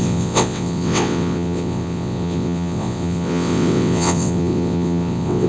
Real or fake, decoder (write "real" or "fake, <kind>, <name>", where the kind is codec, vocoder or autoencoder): fake, vocoder, WaveNeXt